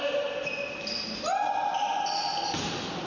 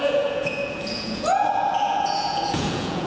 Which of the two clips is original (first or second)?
first